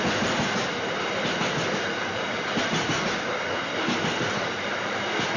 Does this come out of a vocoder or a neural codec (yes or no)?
yes